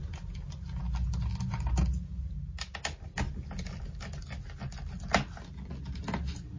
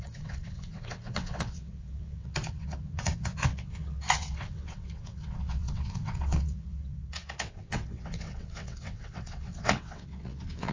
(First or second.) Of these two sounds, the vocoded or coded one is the second